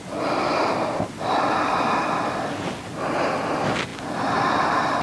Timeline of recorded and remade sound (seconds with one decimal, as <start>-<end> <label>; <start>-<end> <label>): 0.0-5.0 recorded